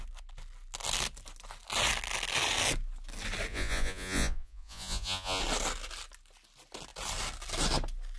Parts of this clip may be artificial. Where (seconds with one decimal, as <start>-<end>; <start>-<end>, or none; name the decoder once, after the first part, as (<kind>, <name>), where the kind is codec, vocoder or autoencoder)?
3.5-5.4 (vocoder, Vocos)